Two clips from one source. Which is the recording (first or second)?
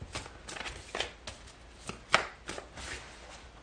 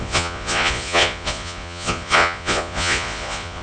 first